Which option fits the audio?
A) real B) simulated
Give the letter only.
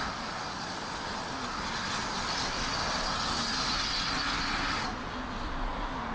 A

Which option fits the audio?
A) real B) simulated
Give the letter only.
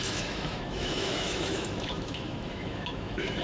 B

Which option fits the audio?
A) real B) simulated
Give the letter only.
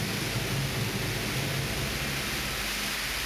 A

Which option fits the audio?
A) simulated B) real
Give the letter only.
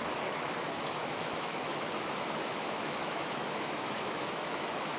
A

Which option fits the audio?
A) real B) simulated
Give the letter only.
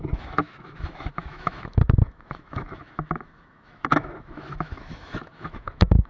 B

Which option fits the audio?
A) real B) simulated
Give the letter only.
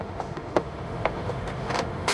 B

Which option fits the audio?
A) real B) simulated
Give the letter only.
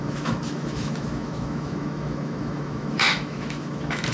B